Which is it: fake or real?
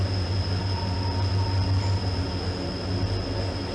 real